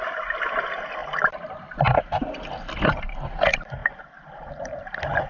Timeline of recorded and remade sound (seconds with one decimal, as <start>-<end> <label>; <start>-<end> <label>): 0.0-1.0 recorded; 1.0-3.0 remade; 3.0-3.8 recorded; 3.8-4.7 remade; 4.7-5.3 recorded